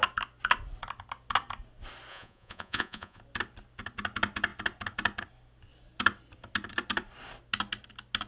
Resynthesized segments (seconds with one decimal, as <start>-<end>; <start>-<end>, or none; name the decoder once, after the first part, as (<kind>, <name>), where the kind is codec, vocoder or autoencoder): 2.1-3.2 (vocoder, Vocos)